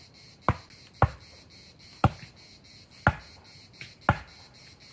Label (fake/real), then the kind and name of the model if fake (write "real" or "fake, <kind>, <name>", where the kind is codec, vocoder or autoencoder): real